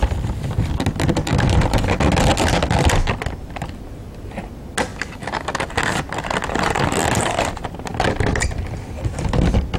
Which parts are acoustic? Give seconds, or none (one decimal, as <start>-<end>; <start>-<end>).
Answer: 0.0-4.9; 5.7-9.8